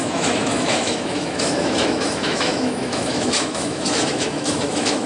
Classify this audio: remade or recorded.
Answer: remade